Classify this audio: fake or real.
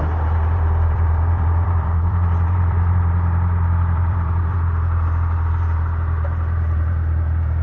fake